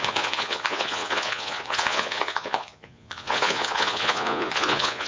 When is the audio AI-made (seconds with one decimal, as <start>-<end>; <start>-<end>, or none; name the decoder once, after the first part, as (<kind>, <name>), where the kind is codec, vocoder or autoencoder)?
0.0-5.1 (vocoder, Vocos)